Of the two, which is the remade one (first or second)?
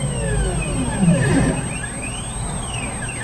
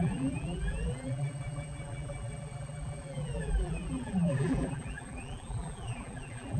second